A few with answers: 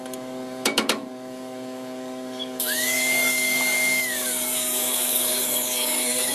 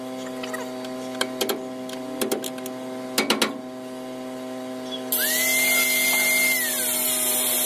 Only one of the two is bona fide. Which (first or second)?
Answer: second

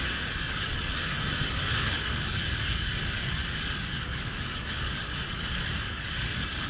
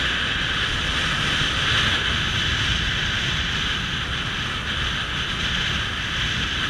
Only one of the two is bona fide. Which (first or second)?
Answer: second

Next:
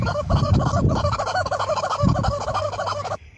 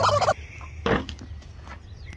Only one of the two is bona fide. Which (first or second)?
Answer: second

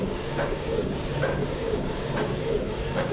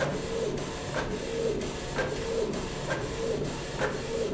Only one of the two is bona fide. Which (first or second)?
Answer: second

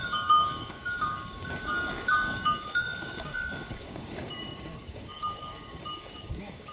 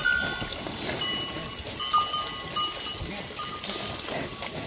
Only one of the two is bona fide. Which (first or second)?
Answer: second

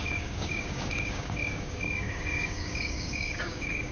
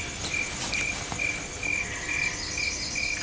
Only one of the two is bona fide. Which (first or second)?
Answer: second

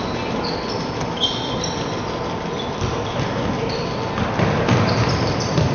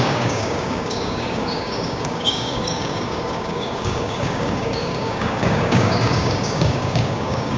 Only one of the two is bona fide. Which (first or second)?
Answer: first